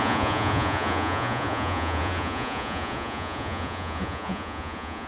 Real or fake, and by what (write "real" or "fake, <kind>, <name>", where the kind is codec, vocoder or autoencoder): fake, vocoder, Vocos